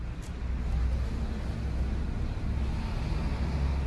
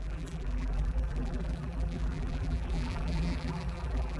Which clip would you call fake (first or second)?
second